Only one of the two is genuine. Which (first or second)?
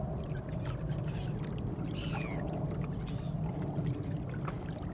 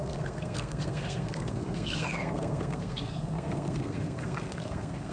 first